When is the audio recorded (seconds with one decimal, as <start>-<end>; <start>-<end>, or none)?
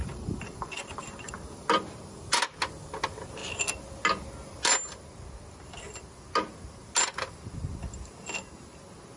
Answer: 1.3-9.2